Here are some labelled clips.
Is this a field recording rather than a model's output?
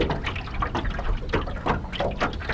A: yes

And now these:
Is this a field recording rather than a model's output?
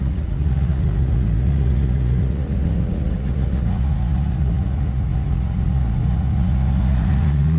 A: no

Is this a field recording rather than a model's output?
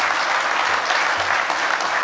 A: yes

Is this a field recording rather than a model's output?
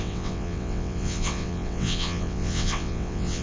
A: no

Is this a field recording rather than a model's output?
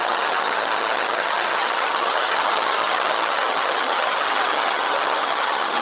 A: no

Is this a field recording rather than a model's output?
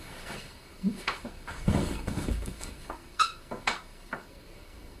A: no